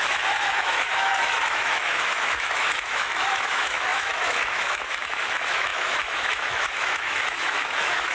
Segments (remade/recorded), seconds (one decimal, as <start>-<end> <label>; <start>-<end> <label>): 0.0-8.1 remade